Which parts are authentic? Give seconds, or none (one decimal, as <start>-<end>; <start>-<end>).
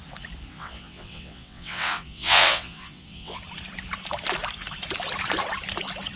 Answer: 0.0-0.5; 3.4-6.2